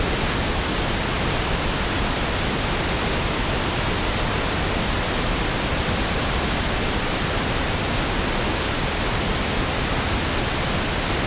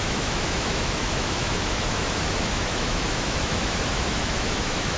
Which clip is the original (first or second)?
first